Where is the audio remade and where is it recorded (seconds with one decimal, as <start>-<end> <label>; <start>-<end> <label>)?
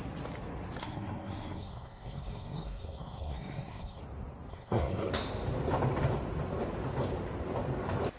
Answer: 0.0-0.8 recorded; 0.8-4.0 remade; 4.0-4.5 recorded; 4.5-5.1 remade; 5.1-8.2 recorded